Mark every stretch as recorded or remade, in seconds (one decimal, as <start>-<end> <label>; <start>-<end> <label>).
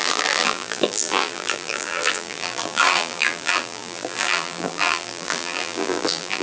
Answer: 0.0-6.4 remade